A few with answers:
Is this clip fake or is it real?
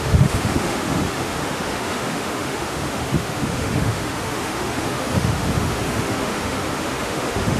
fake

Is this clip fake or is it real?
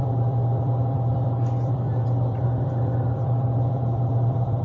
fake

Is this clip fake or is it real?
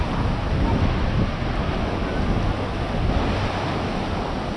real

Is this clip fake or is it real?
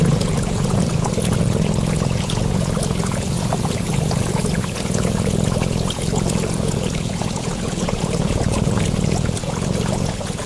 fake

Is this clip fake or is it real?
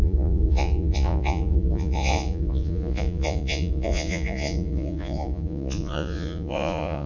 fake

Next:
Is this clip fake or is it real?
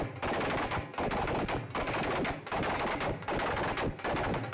real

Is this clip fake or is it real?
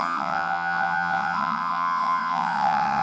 fake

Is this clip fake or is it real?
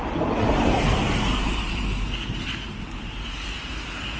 fake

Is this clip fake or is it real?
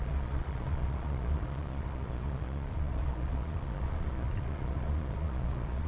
fake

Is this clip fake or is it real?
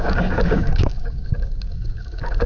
fake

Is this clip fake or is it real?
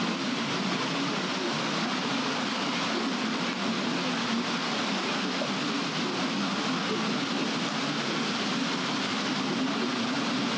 real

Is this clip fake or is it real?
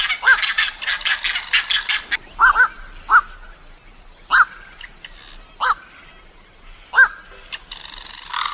real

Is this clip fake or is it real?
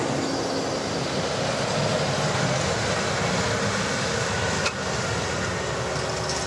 real